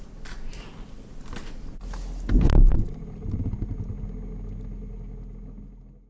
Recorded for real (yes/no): yes